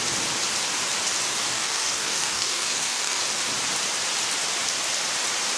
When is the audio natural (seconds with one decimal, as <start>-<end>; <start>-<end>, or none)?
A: 0.0-1.3; 3.2-5.6